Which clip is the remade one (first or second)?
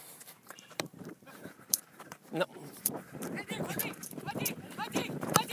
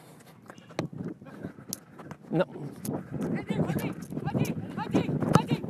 first